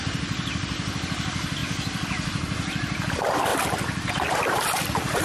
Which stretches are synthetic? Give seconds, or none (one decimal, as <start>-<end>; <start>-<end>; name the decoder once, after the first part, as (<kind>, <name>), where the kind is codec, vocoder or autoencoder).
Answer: 0.0-1.6 (vocoder, BigVGAN v2); 3.1-3.5; 4.1-5.2